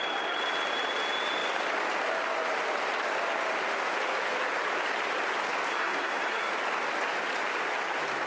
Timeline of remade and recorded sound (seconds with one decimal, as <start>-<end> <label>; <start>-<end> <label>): 0.0-5.7 recorded; 5.7-6.5 remade; 6.5-8.3 recorded